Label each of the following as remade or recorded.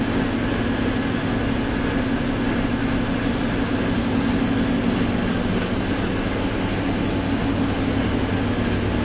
recorded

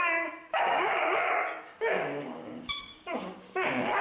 remade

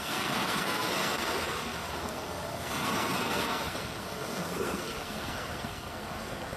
remade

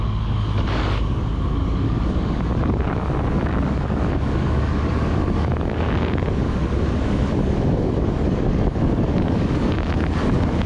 remade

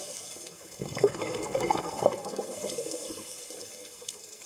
remade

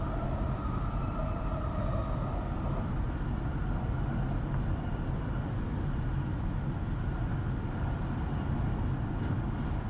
recorded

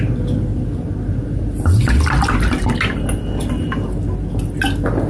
recorded